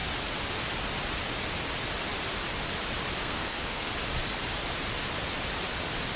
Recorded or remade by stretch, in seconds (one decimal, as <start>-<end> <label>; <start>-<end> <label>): 0.0-3.2 recorded; 3.2-3.9 remade; 3.9-6.2 recorded